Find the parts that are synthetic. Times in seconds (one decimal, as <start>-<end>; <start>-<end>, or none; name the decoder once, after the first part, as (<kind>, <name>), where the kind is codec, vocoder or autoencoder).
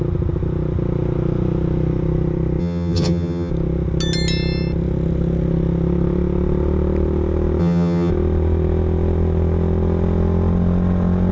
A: 2.6-3.5 (vocoder, HiFi-GAN); 7.6-8.1